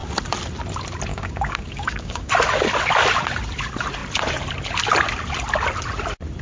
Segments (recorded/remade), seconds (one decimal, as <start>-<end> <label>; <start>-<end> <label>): 0.0-1.1 recorded; 1.1-2.3 remade; 2.3-6.4 recorded